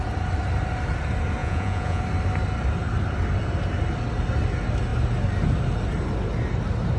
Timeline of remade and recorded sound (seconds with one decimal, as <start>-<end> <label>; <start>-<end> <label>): 0.0-1.4 recorded; 1.4-2.0 remade; 2.0-7.0 recorded